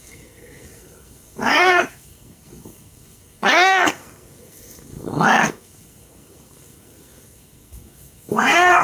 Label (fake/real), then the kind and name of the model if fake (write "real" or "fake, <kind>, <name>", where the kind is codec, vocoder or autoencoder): fake, codec, SNAC